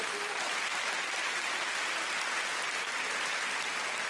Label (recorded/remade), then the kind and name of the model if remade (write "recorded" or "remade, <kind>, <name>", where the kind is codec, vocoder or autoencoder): recorded